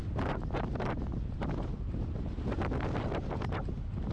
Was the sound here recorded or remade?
recorded